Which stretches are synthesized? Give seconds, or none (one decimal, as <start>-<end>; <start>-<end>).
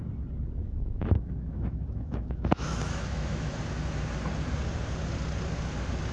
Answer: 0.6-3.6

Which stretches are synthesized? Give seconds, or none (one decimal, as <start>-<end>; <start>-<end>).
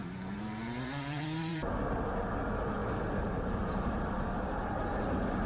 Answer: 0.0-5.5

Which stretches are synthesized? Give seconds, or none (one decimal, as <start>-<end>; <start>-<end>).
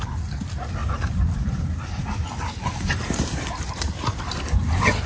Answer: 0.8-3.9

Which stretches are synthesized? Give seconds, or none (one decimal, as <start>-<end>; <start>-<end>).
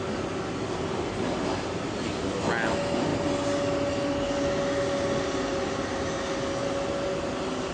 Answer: none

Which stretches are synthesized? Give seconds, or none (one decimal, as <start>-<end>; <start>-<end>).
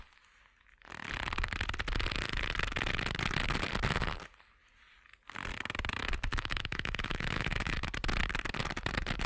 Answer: 6.3-7.9